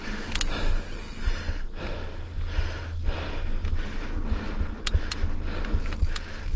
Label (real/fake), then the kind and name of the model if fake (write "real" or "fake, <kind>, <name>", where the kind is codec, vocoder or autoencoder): real